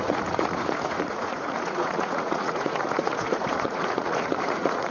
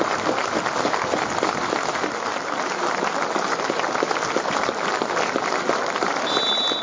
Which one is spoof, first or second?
first